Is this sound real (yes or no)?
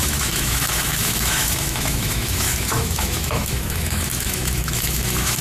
no